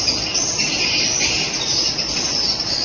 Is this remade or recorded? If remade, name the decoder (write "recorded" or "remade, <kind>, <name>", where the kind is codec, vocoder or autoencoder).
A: recorded